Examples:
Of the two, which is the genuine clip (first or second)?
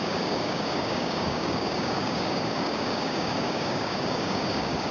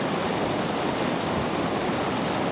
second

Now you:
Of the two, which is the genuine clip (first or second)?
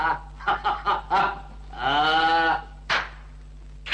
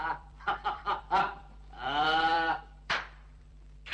first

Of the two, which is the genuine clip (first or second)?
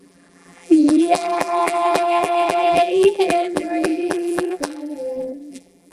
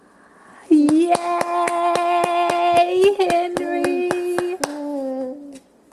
second